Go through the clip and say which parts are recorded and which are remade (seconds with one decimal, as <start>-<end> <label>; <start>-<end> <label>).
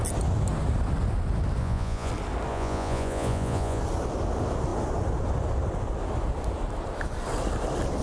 0.0-1.6 recorded; 1.6-2.1 remade; 2.1-2.5 recorded; 2.5-3.8 remade; 3.8-8.0 recorded